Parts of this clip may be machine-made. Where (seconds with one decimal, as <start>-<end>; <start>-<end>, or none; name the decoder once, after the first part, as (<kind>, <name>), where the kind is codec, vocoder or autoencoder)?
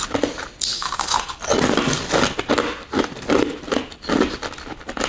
0.7-1.2 (autoencoder, DAC-VAE)